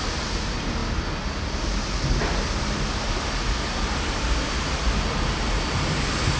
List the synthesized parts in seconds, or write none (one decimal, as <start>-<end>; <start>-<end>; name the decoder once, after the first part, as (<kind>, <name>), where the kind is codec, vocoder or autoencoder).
none